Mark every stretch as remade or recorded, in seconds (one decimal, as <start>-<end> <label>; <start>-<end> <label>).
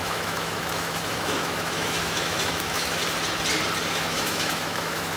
0.0-3.0 remade; 3.0-3.9 recorded; 3.9-5.2 remade